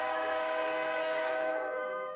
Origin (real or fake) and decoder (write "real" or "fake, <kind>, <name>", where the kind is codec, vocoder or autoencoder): fake, codec, SNAC